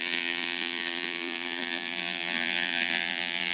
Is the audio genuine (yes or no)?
no